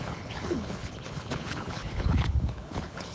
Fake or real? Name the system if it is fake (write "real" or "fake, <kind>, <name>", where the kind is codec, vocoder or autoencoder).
fake, codec, HILCodec